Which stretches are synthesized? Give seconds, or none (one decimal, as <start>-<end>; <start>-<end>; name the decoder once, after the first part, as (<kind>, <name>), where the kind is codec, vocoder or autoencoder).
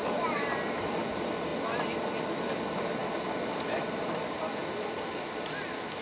0.0-0.5 (vocoder, BigVGAN v2)